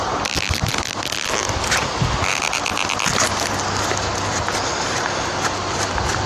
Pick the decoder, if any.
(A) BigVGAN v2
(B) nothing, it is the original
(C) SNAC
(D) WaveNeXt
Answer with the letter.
B